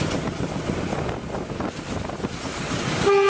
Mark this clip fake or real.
real